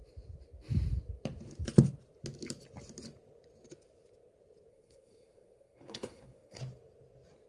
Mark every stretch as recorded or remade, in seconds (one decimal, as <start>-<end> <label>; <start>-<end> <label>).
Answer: 0.0-4.7 recorded; 4.7-6.6 remade; 6.6-7.5 recorded